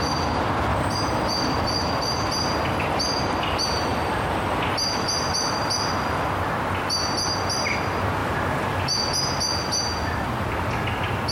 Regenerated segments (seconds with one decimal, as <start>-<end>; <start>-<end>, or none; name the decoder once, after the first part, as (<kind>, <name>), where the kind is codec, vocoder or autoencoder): 0.7-1.6 (vocoder, BigVGAN v2); 3.9-4.4; 8.2-8.8